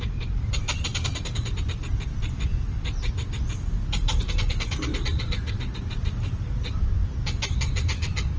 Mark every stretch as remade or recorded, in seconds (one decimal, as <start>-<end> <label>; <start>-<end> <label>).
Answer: 0.0-8.4 recorded